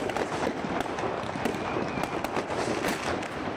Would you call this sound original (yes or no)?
yes